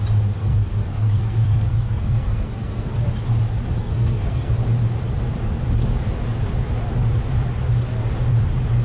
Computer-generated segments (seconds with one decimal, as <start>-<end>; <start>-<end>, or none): 0.4-3.0; 3.8-4.5